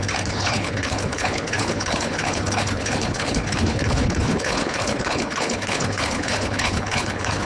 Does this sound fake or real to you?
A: fake